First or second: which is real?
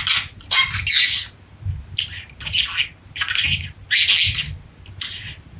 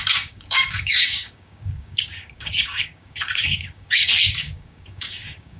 first